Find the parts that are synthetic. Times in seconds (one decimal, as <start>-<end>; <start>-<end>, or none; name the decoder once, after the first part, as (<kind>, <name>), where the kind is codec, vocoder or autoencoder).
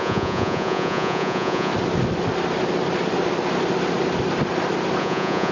0.0-1.7 (vocoder, Vocos); 5.0-5.5